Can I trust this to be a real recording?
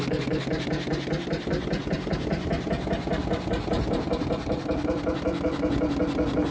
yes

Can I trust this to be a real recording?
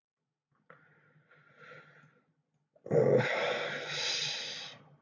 yes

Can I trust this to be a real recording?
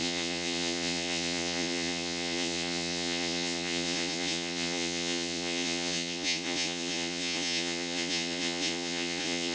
no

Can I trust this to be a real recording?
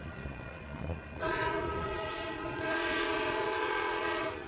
no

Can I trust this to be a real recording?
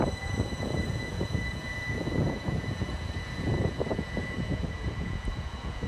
no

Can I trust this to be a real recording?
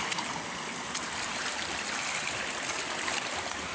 yes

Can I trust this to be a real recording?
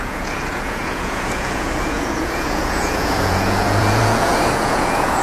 no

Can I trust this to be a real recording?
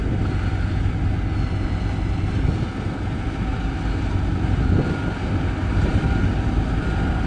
yes